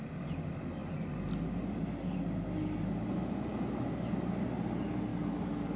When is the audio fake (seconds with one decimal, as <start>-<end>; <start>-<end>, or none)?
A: 5.1-5.8